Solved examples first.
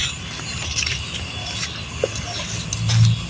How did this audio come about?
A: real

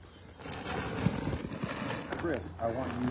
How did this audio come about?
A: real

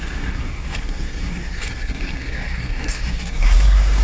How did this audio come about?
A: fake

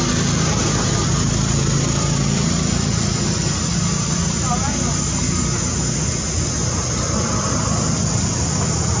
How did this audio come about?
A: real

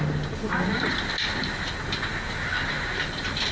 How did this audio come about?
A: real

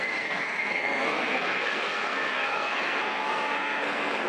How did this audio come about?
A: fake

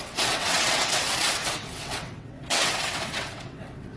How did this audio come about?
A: fake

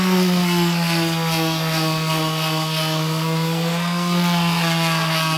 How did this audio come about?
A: fake